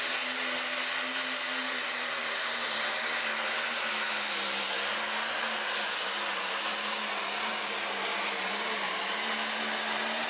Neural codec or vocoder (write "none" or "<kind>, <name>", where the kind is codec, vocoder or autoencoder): none